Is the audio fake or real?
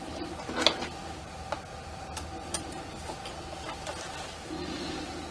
real